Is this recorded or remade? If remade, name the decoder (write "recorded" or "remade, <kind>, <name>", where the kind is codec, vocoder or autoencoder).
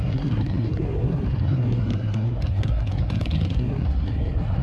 remade, codec, SNAC